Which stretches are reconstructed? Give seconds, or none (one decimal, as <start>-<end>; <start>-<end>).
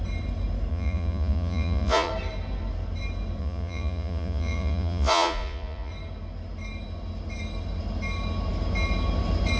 0.7-2.1; 3.4-5.9